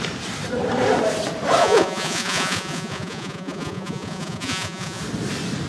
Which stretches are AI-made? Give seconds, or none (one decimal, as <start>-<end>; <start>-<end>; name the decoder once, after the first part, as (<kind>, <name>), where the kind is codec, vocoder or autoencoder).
1.6-5.0 (vocoder, Vocos)